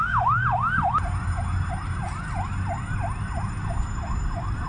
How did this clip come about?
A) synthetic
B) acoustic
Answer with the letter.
B